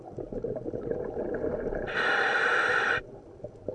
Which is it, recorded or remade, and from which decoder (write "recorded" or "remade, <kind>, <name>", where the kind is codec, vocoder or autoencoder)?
remade, vocoder, BigVGAN v2